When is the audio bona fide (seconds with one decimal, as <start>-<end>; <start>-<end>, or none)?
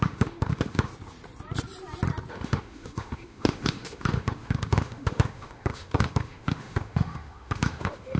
0.9-2.3